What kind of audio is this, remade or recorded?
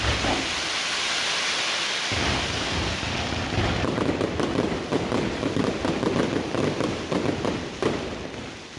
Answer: recorded